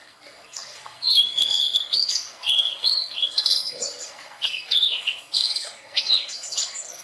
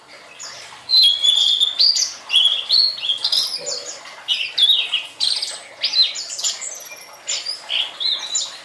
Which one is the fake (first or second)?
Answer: first